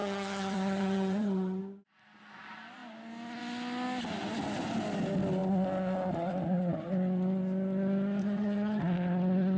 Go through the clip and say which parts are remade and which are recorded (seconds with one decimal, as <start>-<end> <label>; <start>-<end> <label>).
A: 0.0-1.6 remade; 1.6-8.2 recorded; 8.2-8.8 remade; 8.8-9.6 recorded